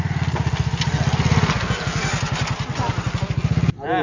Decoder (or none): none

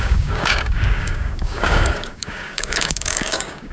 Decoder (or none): codec, DAC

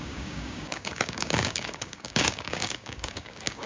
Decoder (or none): codec, DAC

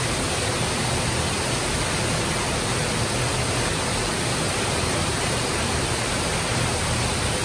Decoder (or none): none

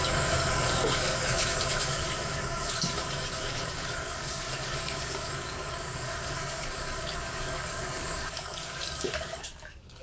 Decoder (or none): codec, DAC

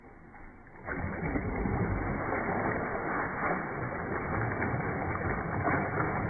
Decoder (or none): none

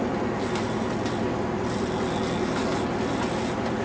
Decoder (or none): none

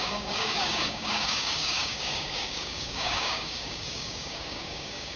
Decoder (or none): codec, DAC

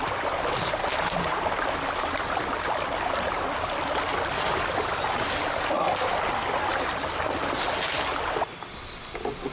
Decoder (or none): none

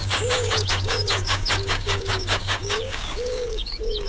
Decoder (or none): codec, DAC